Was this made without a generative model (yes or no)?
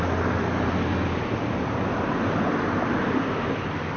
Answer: yes